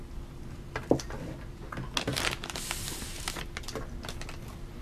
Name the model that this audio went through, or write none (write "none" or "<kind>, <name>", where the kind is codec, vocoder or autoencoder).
none